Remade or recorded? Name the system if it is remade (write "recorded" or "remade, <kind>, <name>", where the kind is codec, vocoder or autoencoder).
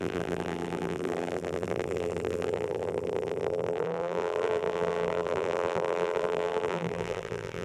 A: remade, vocoder, BigVGAN v2